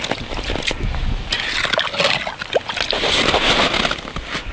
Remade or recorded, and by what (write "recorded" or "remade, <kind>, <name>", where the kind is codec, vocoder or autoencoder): recorded